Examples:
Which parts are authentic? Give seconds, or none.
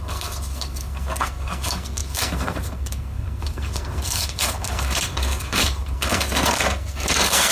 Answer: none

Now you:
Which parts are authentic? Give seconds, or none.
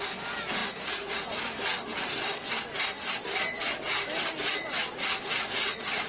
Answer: 0.0-6.1